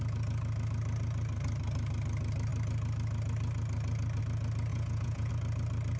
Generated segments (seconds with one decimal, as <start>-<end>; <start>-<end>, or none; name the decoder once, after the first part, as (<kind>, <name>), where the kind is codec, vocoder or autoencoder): 4.7-5.3 (vocoder, Vocos)